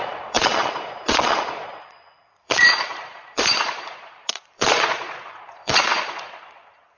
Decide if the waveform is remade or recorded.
remade